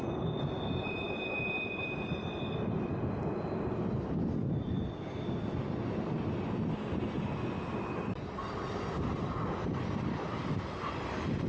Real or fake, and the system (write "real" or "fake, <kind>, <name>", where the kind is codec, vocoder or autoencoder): real